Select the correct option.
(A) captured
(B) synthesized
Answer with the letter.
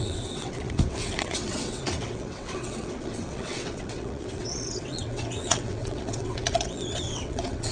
B